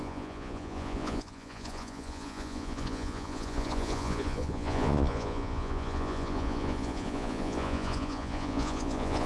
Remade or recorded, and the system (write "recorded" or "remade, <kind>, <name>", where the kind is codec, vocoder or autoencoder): remade, vocoder, Vocos